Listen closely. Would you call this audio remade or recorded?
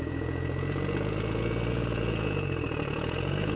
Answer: remade